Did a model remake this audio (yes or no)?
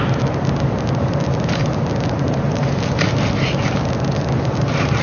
yes